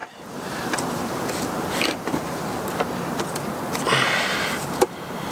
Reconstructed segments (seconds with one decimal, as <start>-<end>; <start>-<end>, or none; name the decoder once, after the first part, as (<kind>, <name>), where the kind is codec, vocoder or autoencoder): 0.0-3.2 (vocoder, BigVGAN v2); 4.3-5.3